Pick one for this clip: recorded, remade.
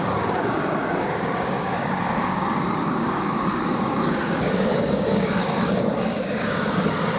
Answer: remade